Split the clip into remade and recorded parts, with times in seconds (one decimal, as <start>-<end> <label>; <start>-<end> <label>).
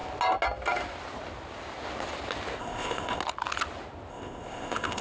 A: 0.0-2.6 recorded; 2.6-3.2 remade; 3.2-4.1 recorded; 4.1-5.0 remade